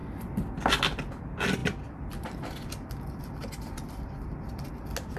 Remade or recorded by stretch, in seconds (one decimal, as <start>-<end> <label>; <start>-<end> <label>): 0.0-5.2 recorded